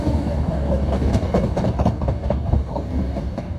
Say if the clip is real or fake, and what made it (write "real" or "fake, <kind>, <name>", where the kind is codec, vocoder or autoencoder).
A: fake, codec, DAC